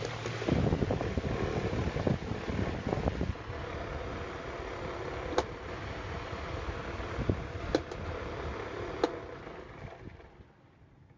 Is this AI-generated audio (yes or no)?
no